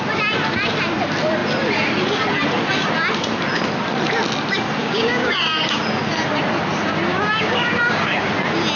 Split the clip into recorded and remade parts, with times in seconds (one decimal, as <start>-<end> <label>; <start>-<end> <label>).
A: 0.0-4.8 recorded; 4.8-5.8 remade; 5.8-7.1 recorded; 7.1-8.3 remade; 8.3-8.8 recorded